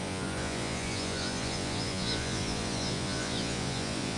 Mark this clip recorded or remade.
remade